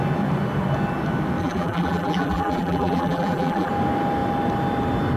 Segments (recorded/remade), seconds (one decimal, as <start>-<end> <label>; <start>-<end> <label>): 0.0-1.4 recorded; 1.4-3.7 remade; 3.7-5.2 recorded